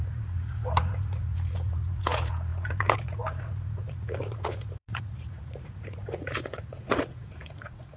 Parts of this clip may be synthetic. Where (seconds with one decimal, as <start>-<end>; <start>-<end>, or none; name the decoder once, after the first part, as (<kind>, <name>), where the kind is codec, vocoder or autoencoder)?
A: 0.0-8.0 (vocoder, Vocos)